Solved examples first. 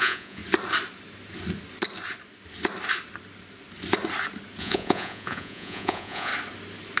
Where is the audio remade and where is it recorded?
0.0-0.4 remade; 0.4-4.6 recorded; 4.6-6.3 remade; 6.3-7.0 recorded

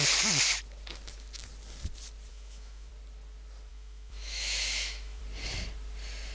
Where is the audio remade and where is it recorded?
0.0-2.3 recorded; 2.3-2.9 remade; 2.9-3.7 recorded; 3.7-5.2 remade; 5.2-6.3 recorded

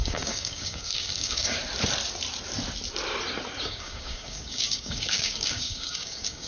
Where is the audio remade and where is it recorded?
0.0-1.6 remade; 1.6-3.6 recorded; 3.6-6.5 remade

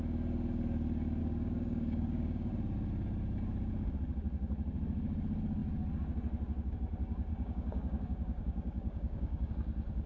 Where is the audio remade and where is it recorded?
0.0-1.2 recorded; 1.2-2.5 remade; 2.5-7.3 recorded; 7.3-9.5 remade; 9.5-10.1 recorded